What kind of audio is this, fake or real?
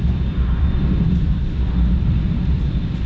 real